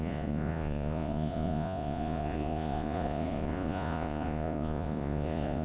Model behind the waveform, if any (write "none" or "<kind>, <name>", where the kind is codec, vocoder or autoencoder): vocoder, Vocos